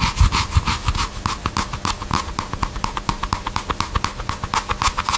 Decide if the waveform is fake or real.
real